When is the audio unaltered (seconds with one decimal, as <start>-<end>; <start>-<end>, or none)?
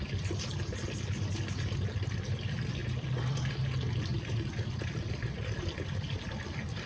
0.0-2.8; 3.5-4.1; 5.1-6.9